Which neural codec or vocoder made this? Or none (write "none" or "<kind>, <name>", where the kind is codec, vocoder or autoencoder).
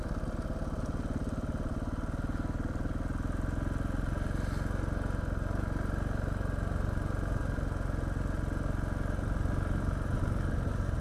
none